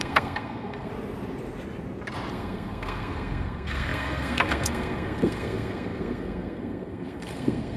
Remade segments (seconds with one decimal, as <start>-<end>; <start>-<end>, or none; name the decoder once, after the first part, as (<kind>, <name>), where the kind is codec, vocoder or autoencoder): 0.0-0.9 (codec, SNAC); 2.3-7.8